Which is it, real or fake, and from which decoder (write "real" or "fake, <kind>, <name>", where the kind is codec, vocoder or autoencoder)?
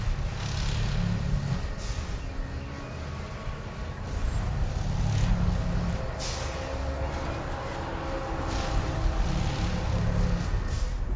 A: real